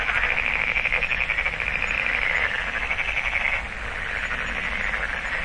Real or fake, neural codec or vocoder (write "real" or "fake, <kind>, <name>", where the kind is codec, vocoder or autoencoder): real